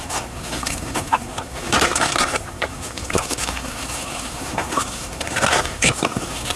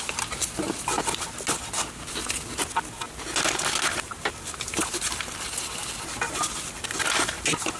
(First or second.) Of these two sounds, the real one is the second